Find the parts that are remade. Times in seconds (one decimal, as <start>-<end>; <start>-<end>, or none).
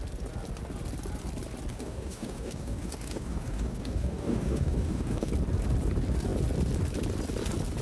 1.7-5.3